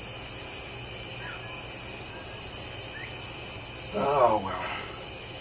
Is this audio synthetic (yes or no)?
no